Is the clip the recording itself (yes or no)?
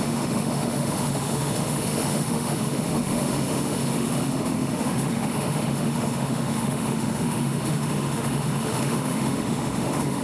no